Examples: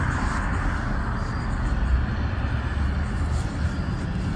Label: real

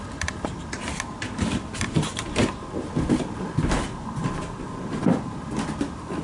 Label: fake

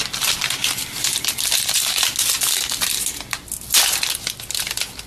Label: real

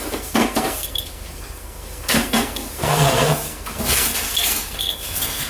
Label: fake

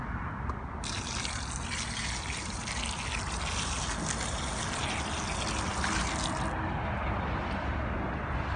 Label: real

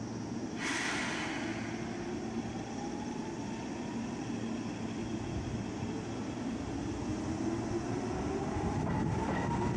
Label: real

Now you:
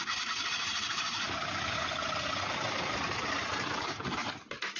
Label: fake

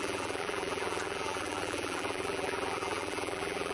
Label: fake